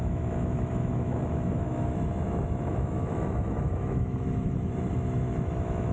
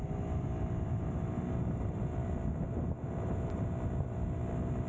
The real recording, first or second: second